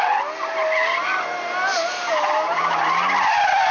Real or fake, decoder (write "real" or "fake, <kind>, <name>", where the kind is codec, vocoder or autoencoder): real